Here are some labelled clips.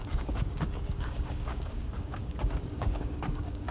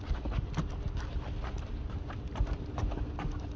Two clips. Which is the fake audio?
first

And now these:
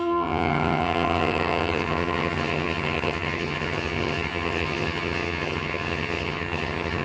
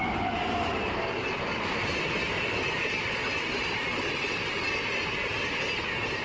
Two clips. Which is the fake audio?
first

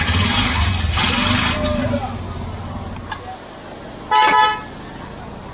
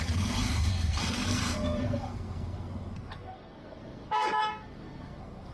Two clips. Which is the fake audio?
second